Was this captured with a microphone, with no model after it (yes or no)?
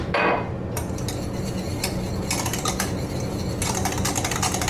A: yes